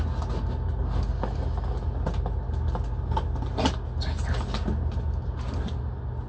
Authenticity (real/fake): real